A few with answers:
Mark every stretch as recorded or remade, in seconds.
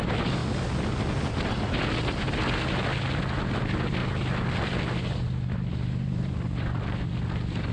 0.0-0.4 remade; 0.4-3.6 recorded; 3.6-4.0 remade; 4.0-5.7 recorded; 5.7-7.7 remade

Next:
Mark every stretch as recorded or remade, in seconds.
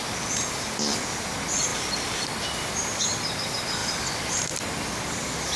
0.0-1.7 recorded; 1.7-3.0 remade; 3.0-5.6 recorded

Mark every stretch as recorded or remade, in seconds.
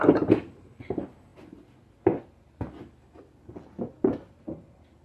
0.0-5.0 recorded